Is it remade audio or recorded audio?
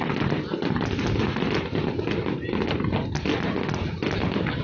recorded